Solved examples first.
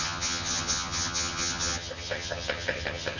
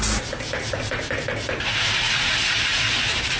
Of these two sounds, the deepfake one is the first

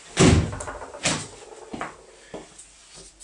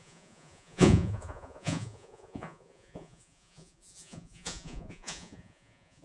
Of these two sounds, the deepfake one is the second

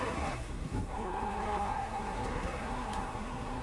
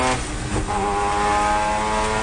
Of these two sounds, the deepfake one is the first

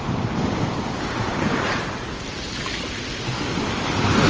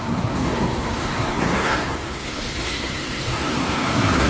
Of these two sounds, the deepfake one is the second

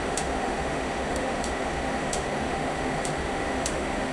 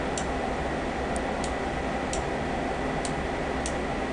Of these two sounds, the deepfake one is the first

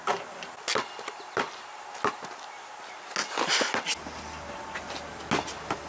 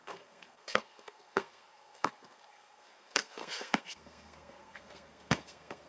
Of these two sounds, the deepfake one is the second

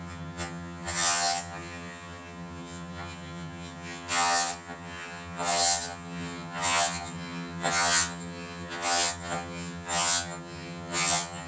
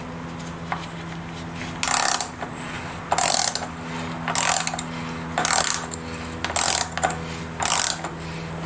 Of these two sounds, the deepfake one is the first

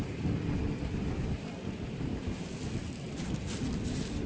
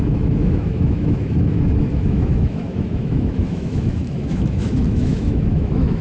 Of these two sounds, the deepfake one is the second